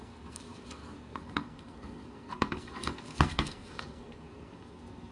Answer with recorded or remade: remade